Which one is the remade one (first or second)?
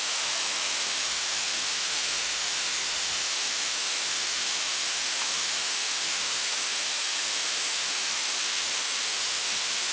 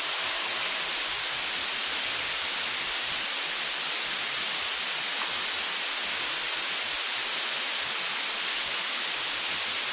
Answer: first